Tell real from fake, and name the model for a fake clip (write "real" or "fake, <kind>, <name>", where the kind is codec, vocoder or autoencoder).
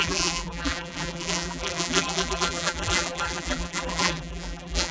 fake, vocoder, BigVGAN v2